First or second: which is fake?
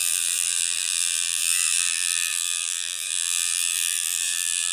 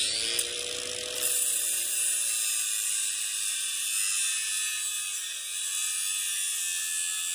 first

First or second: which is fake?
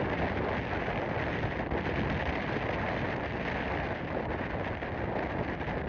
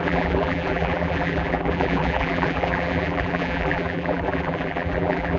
second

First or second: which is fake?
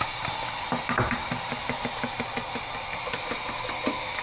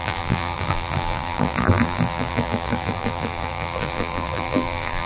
second